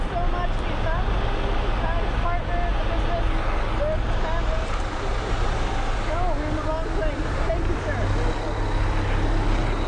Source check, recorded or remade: recorded